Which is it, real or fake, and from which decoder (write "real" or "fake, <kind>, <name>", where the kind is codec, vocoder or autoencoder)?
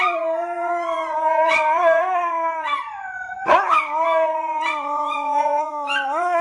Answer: fake, vocoder, Vocos